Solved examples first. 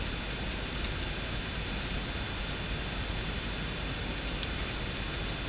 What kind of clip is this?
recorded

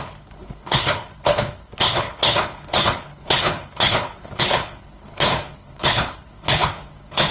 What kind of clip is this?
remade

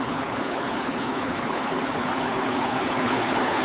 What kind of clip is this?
remade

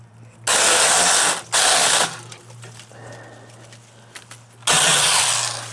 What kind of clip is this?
recorded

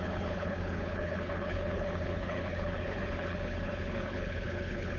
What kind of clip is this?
remade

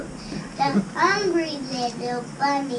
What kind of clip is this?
recorded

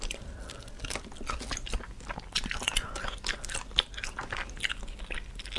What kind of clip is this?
recorded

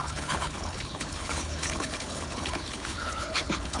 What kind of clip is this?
remade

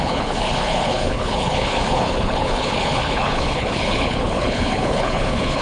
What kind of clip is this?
remade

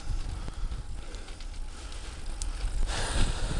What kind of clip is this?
recorded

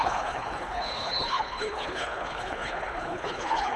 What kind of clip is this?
remade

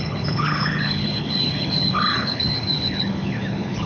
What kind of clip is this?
remade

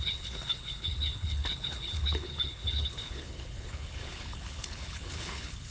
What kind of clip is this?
remade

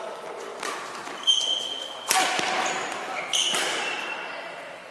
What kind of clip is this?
recorded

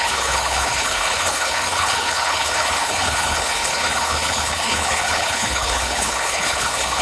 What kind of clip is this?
remade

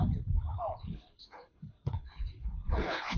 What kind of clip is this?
remade